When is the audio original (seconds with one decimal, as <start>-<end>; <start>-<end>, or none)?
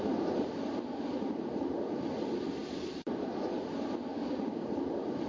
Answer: 0.0-4.1; 4.7-5.3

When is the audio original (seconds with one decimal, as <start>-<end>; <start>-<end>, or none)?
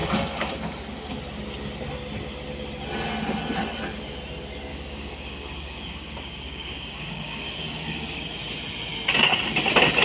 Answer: 1.1-4.7; 8.2-10.0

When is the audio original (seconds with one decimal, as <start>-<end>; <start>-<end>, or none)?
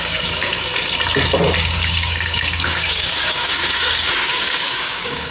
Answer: 0.7-1.6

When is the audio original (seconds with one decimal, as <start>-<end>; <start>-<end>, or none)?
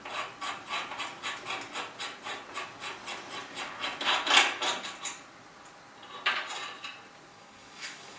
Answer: 0.0-7.3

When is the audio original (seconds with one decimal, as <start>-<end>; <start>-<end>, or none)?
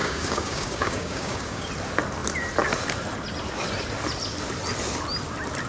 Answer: 1.7-5.7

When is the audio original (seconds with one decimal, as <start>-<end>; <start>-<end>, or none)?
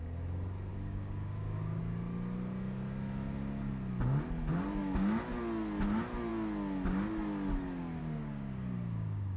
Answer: 0.0-0.7; 1.8-8.0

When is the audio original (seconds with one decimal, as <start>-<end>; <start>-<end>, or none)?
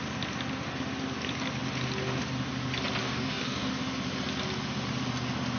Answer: 0.0-3.0; 3.7-5.6